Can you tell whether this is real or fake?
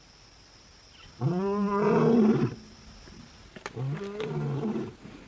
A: real